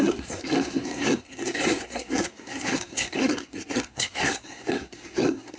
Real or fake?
fake